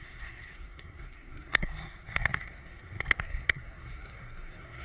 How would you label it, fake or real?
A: fake